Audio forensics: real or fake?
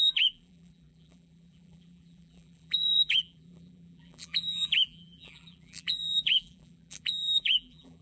fake